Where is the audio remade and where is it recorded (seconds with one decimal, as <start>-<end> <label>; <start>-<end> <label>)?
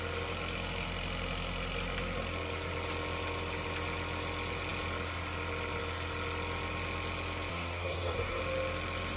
0.0-7.5 recorded; 7.5-8.4 remade; 8.4-9.2 recorded